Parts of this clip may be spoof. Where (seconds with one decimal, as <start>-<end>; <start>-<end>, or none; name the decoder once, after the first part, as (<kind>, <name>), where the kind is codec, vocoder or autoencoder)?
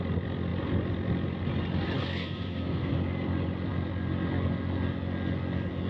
2.0-2.9 (codec, SNAC)